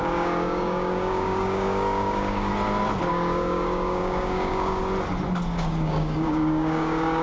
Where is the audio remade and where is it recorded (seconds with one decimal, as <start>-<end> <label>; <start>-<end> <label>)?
0.0-2.5 remade; 2.5-3.1 recorded; 3.1-4.8 remade; 4.8-5.5 recorded; 5.5-7.2 remade